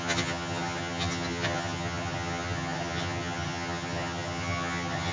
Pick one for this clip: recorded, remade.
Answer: remade